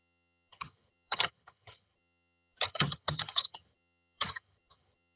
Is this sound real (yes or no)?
no